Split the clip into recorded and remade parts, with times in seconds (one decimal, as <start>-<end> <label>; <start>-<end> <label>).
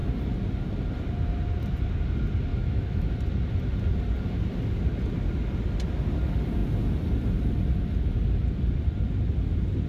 0.0-2.5 recorded; 2.5-3.1 remade; 3.1-9.9 recorded